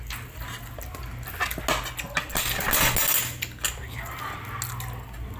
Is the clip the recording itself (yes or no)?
yes